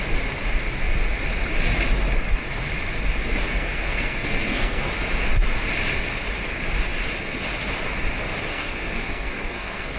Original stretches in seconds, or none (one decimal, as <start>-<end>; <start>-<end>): 0.0-3.5; 4.9-8.5